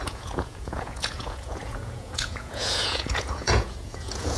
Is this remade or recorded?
remade